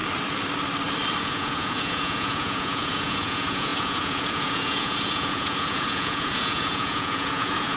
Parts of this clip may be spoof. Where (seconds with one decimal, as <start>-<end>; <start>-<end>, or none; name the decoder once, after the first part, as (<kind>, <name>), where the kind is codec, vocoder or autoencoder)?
1.2-7.8 (vocoder, Vocos)